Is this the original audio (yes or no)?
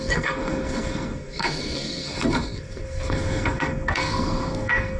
no